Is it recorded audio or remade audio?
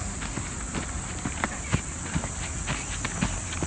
recorded